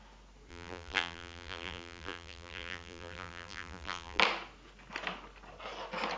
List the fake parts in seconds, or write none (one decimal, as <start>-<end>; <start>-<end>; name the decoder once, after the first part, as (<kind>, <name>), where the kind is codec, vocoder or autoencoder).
0.5-4.2 (vocoder, BigVGAN v2)